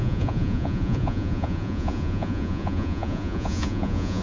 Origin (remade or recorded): remade